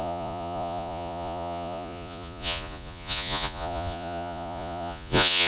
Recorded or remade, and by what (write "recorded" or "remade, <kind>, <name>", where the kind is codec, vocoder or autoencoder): remade, vocoder, Vocos